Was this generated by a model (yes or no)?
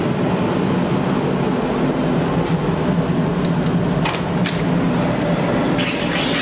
no